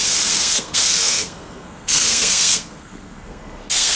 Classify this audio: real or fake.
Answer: fake